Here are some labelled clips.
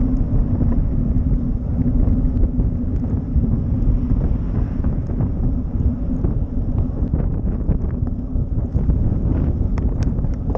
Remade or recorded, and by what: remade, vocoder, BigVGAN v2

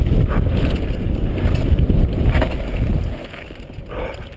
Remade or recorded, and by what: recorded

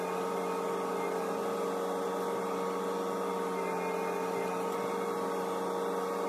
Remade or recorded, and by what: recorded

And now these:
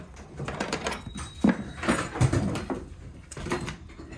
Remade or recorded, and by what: remade, vocoder, BigVGAN v2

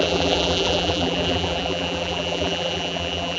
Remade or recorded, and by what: remade, vocoder, BigVGAN v2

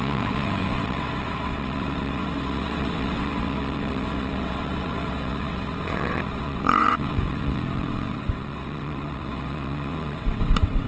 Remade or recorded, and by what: remade, vocoder, WaveNeXt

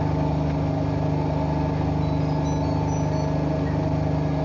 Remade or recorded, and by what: recorded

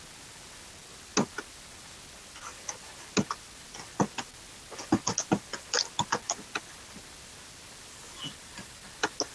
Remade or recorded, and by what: recorded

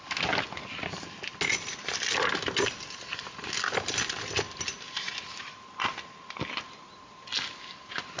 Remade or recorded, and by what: recorded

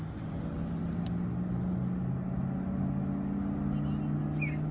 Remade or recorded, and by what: recorded